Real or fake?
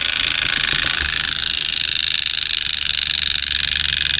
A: real